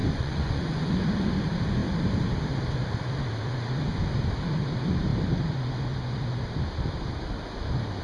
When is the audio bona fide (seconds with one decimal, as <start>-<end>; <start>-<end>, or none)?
1.0-8.0